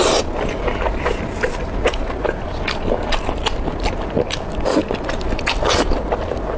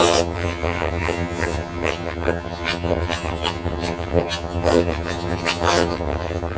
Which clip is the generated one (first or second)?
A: second